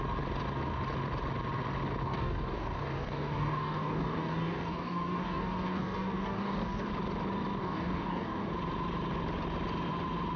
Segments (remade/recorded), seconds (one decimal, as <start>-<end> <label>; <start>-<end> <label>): 0.0-2.0 recorded; 2.0-6.9 remade; 6.9-7.6 recorded; 7.6-8.5 remade; 8.5-10.4 recorded